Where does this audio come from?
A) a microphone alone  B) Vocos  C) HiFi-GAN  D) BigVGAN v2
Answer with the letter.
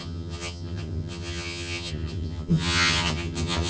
C